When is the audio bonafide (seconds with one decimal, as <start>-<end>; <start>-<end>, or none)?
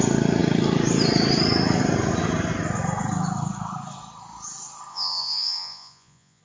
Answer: 0.0-4.9